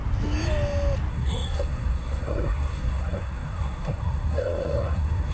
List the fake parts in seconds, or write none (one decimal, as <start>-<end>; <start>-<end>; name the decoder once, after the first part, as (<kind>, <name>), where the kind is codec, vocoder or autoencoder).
1.1-5.3 (codec, SNAC)